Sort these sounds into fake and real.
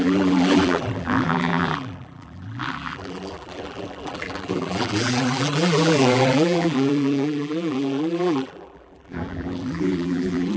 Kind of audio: fake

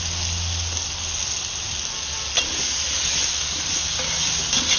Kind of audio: real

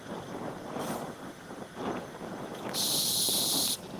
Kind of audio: fake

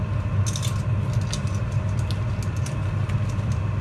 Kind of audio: real